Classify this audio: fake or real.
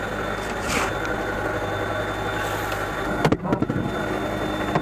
real